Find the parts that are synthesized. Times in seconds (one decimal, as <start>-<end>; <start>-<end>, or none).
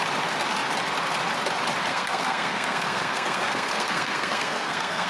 1.9-5.1